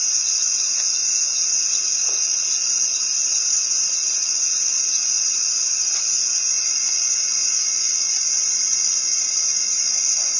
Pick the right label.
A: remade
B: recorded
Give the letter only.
B